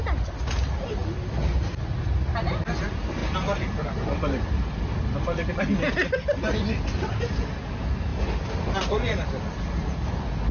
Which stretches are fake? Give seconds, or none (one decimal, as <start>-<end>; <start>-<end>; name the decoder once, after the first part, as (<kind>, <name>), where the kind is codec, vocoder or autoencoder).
1.0-1.5 (vocoder, BigVGAN v2); 3.2-5.6; 8.1-10.1